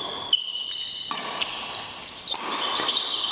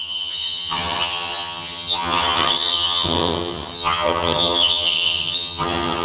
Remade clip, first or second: second